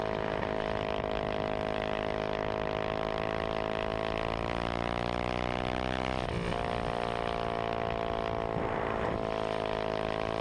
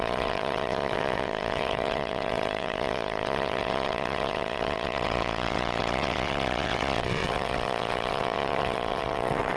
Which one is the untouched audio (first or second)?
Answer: first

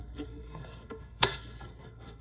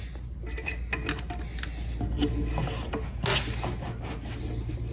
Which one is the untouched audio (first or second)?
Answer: second